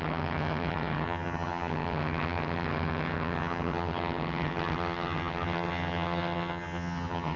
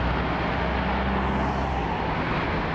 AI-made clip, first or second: first